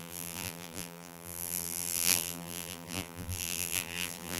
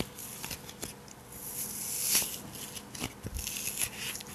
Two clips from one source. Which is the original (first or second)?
second